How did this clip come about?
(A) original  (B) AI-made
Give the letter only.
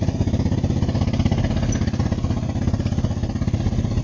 A